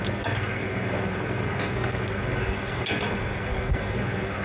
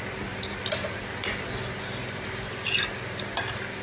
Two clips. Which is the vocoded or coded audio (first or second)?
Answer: first